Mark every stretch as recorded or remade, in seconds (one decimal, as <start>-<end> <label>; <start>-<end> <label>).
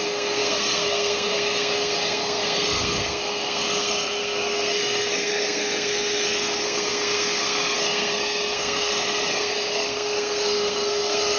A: 0.0-11.4 remade